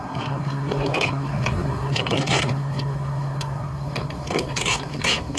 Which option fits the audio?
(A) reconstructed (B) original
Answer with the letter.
A